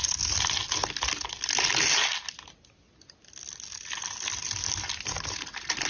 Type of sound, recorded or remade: recorded